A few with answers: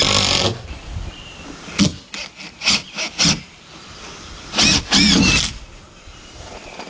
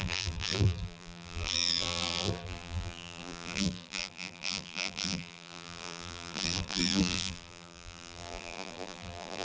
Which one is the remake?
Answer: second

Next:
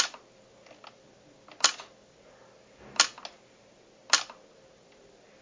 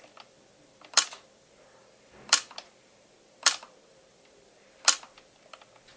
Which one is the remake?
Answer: second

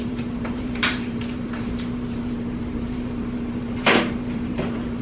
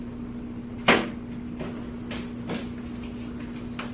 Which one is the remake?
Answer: first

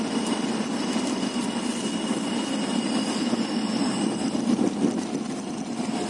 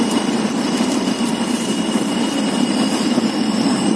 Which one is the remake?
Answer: second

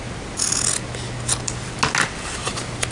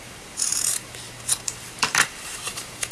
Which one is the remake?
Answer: second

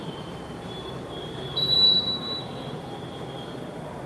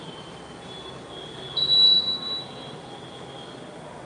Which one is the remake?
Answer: first